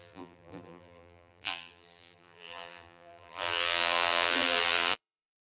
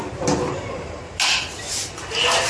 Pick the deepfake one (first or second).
first